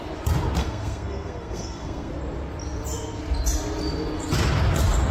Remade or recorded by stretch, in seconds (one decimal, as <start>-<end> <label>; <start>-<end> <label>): 0.0-0.6 recorded; 0.6-2.1 remade; 2.1-5.1 recorded